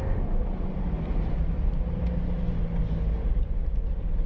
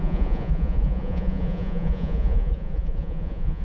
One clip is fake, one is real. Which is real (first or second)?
first